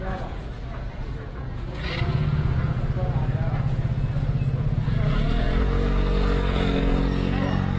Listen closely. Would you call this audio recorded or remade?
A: remade